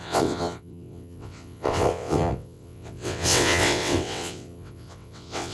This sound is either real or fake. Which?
fake